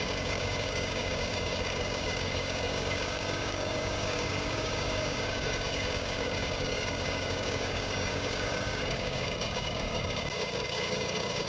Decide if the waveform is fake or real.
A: fake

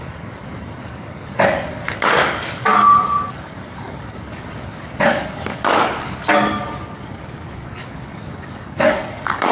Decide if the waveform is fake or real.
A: fake